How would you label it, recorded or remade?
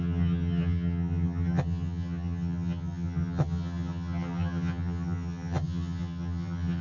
remade